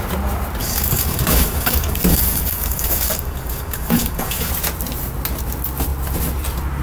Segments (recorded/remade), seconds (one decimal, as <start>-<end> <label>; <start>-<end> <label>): 0.0-0.6 recorded; 0.6-4.5 remade; 4.5-6.8 recorded